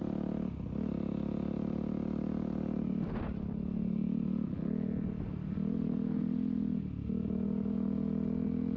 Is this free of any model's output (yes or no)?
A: yes